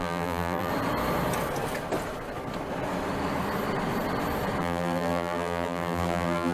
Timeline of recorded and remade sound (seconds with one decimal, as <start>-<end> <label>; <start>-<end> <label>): 0.0-0.7 remade; 0.7-4.6 recorded; 4.6-6.5 remade